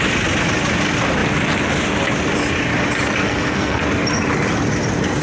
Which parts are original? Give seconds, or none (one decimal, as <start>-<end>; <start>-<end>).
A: 0.0-3.2; 3.8-5.2